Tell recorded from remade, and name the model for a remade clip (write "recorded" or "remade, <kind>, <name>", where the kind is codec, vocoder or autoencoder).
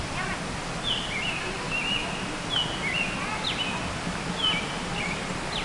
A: recorded